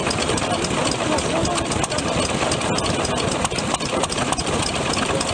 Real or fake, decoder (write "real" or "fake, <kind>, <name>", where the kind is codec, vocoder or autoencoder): real